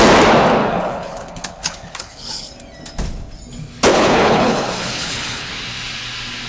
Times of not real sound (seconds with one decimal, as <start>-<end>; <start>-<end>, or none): 0.6-2.5; 3.9-5.5